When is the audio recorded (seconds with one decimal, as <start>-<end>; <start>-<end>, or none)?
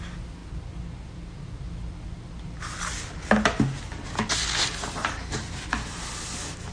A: 0.0-6.7